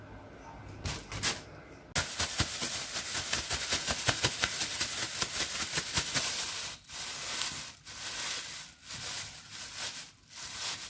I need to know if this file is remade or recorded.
recorded